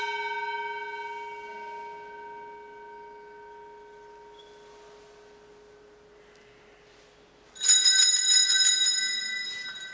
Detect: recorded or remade recorded